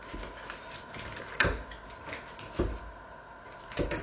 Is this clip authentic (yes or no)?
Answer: yes